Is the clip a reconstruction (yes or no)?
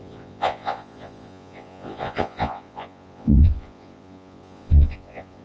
yes